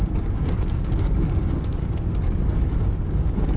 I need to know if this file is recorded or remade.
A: remade